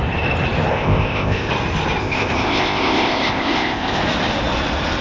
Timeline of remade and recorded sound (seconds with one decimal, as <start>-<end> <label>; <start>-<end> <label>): 0.0-0.7 recorded; 0.7-1.5 remade; 1.5-2.0 recorded; 2.0-4.0 remade; 4.0-5.0 recorded